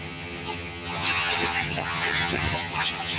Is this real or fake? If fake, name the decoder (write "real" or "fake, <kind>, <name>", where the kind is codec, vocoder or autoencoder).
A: fake, vocoder, HiFi-GAN